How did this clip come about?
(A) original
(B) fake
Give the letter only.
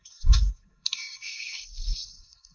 B